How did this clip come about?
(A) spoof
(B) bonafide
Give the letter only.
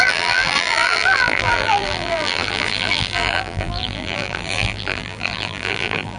A